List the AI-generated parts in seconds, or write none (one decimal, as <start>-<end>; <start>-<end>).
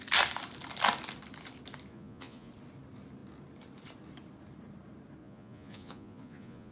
1.9-2.5; 5.2-6.7